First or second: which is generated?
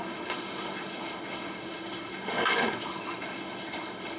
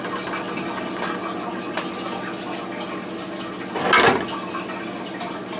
first